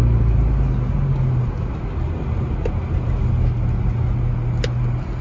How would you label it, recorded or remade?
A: recorded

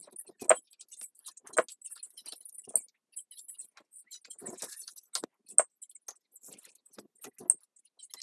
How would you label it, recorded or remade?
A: recorded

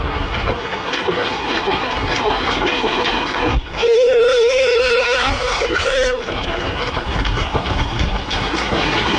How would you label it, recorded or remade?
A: remade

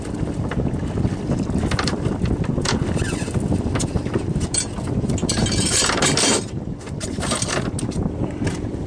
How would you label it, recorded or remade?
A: recorded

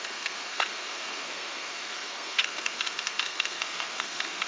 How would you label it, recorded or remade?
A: remade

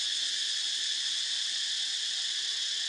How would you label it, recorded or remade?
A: recorded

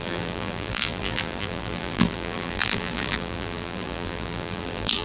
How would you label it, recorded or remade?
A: remade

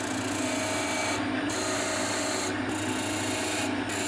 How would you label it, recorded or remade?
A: recorded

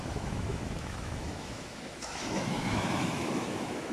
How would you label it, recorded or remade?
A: remade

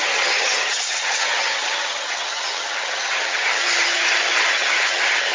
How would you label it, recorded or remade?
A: remade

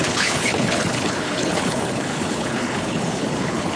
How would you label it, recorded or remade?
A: remade